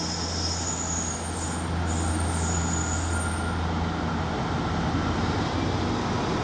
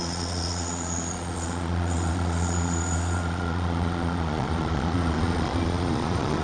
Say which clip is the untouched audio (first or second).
first